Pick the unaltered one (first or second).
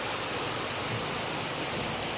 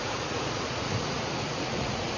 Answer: first